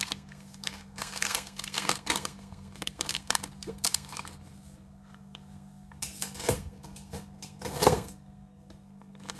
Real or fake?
fake